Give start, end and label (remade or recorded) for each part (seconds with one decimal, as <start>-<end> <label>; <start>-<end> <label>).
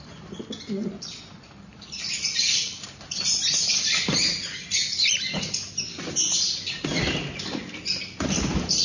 0.0-1.7 recorded; 1.7-3.3 remade; 3.3-8.8 recorded